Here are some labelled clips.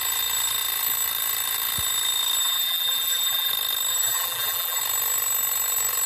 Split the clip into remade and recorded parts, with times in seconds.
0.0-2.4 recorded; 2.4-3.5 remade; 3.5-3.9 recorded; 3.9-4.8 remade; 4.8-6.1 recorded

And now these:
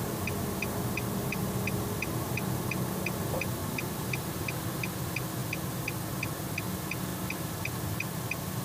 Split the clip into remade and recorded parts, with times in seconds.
0.0-8.6 recorded

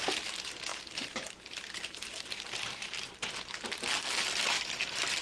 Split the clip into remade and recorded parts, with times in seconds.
0.0-0.7 recorded; 0.7-3.3 remade; 3.3-5.2 recorded

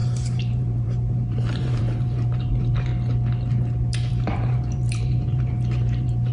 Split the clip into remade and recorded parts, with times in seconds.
0.0-2.9 remade; 2.9-4.1 recorded; 4.1-6.3 remade

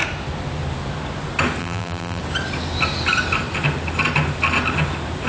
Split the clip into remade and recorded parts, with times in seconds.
0.0-1.6 recorded; 1.6-2.2 remade; 2.2-5.3 recorded